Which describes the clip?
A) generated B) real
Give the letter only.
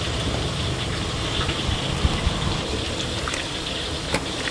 B